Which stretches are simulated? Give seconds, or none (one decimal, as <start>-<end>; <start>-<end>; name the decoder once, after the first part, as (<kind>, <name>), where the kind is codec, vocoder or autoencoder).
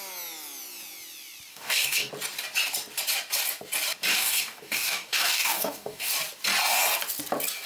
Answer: 1.5-2.1 (codec, DAC); 4.1-6.1